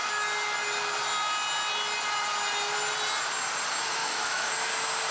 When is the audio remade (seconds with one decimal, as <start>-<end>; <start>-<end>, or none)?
4.0-4.5